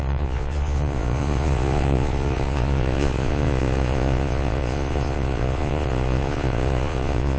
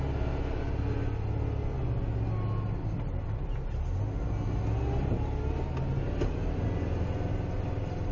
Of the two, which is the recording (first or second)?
second